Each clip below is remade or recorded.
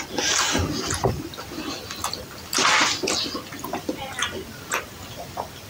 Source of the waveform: recorded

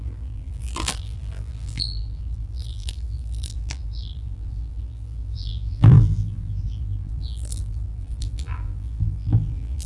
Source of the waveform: remade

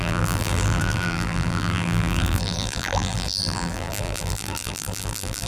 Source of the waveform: remade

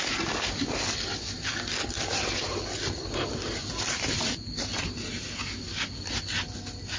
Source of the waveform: recorded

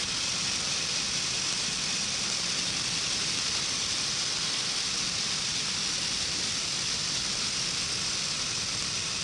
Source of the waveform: recorded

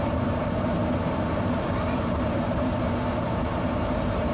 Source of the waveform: remade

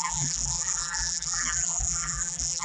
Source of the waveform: remade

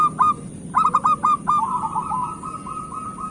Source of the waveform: recorded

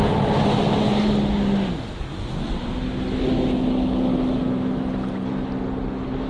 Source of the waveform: recorded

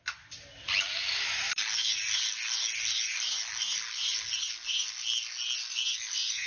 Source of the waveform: recorded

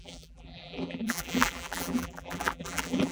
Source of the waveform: remade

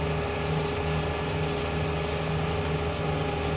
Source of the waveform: recorded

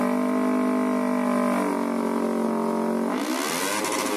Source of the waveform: recorded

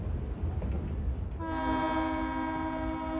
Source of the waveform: recorded